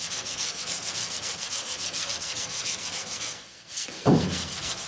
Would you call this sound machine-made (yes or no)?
yes